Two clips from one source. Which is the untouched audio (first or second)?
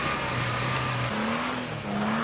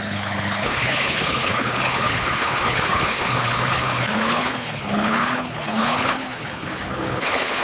first